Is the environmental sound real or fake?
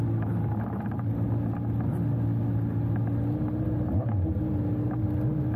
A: real